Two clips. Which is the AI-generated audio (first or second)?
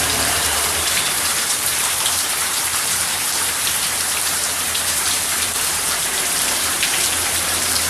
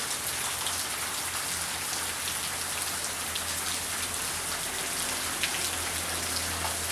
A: first